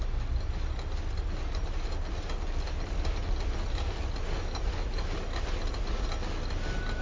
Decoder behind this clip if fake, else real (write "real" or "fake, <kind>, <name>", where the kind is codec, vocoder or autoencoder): real